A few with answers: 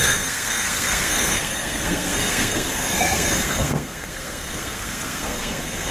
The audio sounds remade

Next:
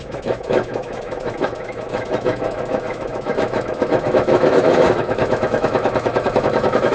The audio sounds remade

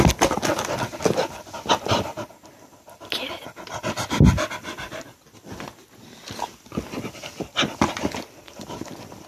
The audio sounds recorded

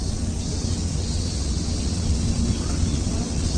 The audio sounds remade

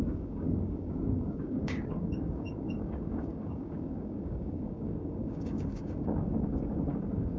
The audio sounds remade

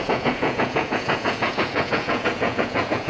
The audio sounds remade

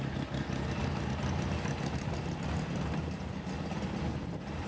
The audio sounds recorded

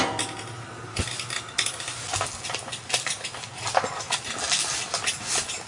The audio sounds recorded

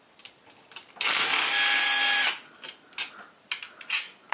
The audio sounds recorded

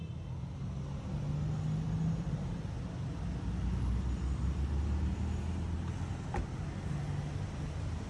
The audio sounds recorded